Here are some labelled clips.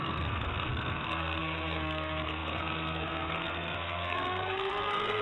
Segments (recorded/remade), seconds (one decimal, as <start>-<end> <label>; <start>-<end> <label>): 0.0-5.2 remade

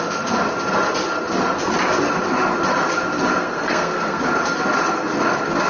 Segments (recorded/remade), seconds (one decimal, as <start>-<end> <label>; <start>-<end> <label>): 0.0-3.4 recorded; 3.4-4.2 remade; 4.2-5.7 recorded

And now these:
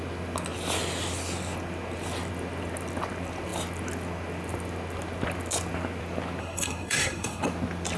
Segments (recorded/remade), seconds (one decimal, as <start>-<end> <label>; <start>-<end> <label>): 0.0-6.4 recorded; 6.4-7.4 remade; 7.4-8.0 recorded